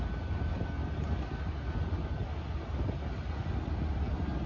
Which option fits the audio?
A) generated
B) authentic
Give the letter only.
B